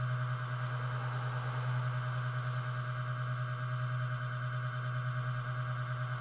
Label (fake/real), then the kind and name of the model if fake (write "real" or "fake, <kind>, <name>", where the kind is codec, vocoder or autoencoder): real